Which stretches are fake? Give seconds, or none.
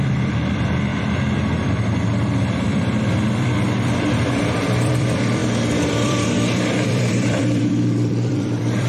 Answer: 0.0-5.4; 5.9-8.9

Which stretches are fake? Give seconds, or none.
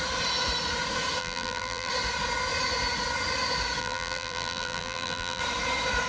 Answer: 1.2-1.9; 3.8-5.4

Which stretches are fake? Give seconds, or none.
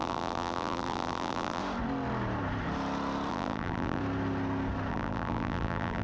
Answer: 0.0-1.6; 3.3-4.0; 4.9-6.0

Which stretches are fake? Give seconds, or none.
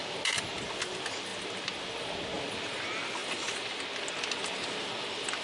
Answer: 0.0-0.6; 3.2-3.8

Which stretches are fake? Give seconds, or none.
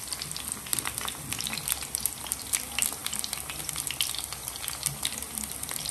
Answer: 0.7-1.7